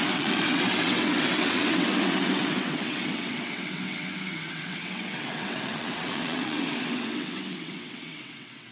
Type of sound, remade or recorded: remade